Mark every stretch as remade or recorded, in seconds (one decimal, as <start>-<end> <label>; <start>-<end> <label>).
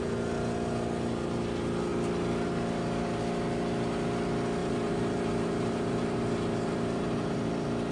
0.0-4.6 recorded; 4.6-7.5 remade; 7.5-7.9 recorded